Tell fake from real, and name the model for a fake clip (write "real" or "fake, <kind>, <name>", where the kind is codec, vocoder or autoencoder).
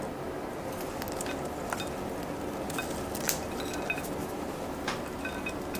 real